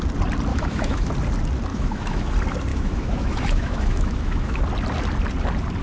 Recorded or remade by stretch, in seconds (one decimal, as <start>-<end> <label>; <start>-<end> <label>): 0.0-0.5 recorded; 0.5-1.1 remade; 1.1-1.7 recorded; 1.7-2.3 remade; 2.3-2.7 recorded; 2.7-4.6 remade; 4.6-5.8 recorded